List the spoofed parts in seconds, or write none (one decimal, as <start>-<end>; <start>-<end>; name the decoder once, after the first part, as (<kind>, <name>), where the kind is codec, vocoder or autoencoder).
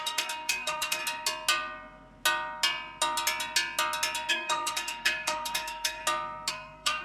0.0-1.0 (codec, SNAC); 4.3-6.0; 6.5-7.0